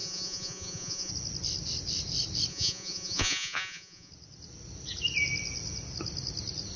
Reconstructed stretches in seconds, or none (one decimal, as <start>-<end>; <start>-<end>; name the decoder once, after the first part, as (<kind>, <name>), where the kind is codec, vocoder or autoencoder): 0.0-1.1 (vocoder, Vocos); 2.5-4.1